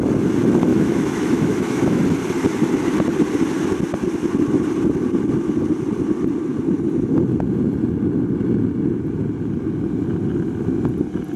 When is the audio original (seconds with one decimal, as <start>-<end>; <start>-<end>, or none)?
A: 0.0-0.7; 2.0-11.4